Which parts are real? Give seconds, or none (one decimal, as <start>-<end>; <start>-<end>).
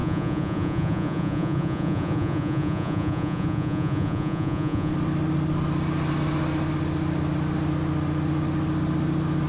4.9-9.5